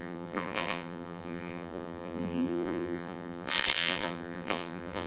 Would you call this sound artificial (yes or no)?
yes